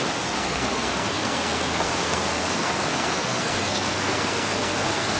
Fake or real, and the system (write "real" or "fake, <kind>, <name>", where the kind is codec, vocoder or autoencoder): fake, codec, SNAC